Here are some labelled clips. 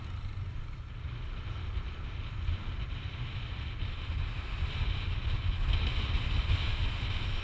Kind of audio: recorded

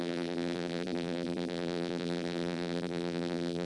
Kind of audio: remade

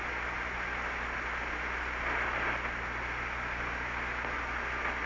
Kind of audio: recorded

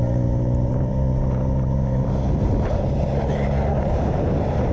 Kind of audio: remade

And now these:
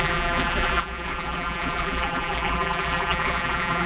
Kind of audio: remade